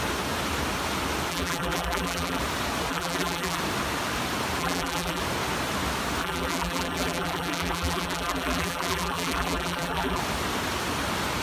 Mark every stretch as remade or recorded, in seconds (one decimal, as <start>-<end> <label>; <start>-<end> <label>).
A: 0.0-1.3 recorded; 1.3-2.4 remade; 2.4-2.9 recorded; 2.9-3.6 remade; 3.6-4.6 recorded; 4.6-5.2 remade; 5.2-6.2 recorded; 6.2-10.2 remade; 10.2-11.4 recorded